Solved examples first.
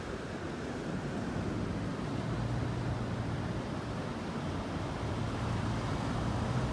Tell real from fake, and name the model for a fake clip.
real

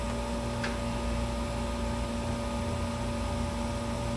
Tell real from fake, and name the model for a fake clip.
real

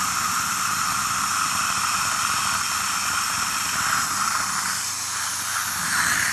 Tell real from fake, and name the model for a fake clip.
real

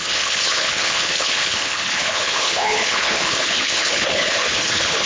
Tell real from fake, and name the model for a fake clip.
fake, codec, HILCodec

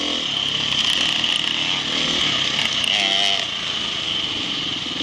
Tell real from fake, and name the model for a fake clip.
real